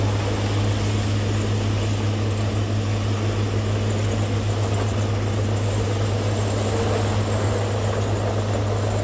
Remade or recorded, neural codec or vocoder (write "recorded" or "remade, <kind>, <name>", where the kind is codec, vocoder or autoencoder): recorded